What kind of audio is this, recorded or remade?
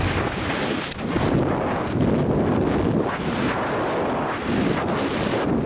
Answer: recorded